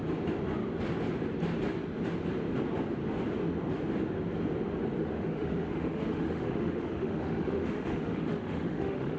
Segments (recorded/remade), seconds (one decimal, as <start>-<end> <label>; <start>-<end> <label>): 0.0-5.0 recorded; 5.0-9.2 remade